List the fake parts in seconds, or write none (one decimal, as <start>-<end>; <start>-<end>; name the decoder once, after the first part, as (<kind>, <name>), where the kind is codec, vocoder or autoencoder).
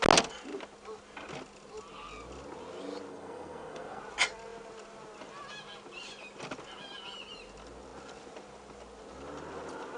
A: 3.1-4.0 (codec, SNAC)